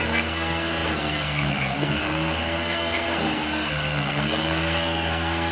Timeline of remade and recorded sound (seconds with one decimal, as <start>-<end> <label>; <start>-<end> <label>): 0.0-5.5 remade